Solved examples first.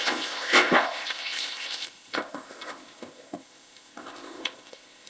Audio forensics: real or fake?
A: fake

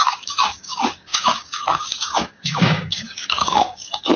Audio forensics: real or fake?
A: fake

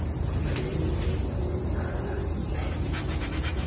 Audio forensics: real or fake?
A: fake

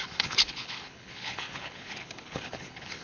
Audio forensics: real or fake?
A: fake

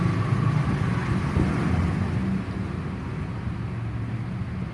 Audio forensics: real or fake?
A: real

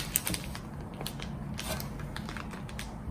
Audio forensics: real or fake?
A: real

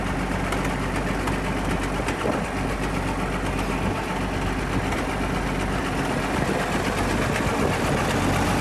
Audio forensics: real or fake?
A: real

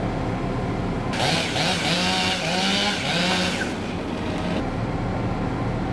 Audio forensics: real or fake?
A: real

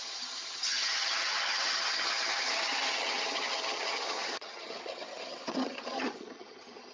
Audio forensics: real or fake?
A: fake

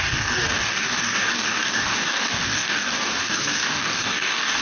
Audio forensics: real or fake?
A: fake